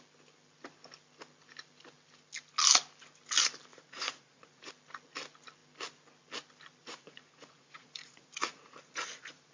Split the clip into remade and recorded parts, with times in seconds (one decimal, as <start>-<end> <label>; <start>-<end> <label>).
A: 0.0-3.7 recorded; 3.7-4.7 remade; 4.7-6.8 recorded; 6.8-9.5 remade